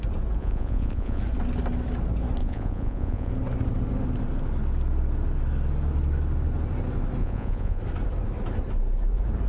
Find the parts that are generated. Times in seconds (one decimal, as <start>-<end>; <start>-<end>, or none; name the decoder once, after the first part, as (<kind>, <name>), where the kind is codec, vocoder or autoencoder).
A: 0.4-1.2 (vocoder, Vocos); 2.4-3.3; 7.2-7.8